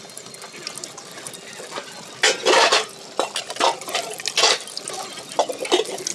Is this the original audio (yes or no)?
yes